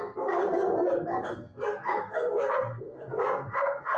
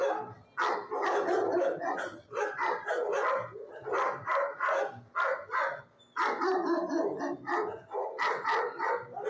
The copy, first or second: first